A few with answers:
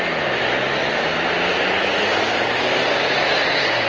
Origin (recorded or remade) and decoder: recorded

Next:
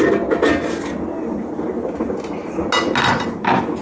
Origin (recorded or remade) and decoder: recorded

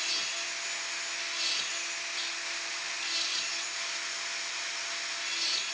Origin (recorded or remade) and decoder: recorded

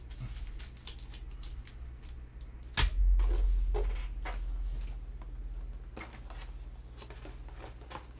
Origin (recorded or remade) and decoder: recorded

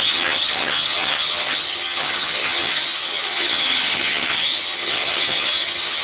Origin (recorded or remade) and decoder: remade, vocoder, HiFi-GAN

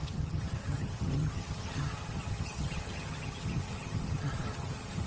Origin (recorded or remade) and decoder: remade, vocoder, HiFi-GAN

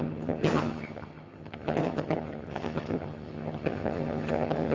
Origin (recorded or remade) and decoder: remade, vocoder, HiFi-GAN